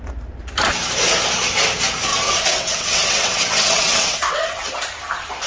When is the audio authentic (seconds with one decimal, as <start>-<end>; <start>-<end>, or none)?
0.0-2.1; 4.7-5.5